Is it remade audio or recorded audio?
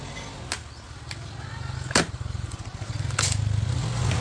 recorded